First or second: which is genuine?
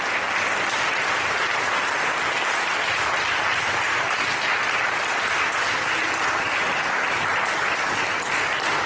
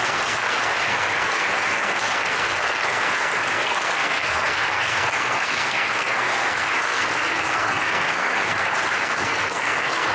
first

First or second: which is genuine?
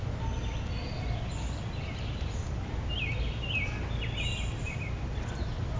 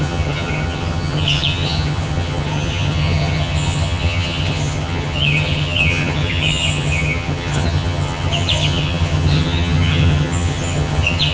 first